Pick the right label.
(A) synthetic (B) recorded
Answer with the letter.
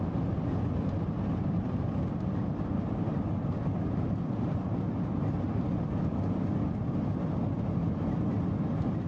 B